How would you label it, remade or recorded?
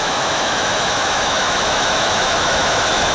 remade